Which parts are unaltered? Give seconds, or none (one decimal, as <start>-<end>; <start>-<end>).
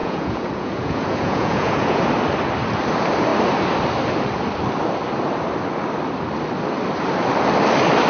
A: 2.0-8.1